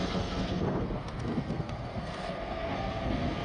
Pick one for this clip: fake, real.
fake